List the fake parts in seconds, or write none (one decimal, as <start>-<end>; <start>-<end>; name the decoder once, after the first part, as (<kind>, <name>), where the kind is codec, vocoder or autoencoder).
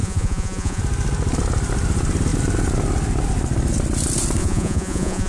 0.0-0.8 (vocoder, Vocos); 4.4-5.3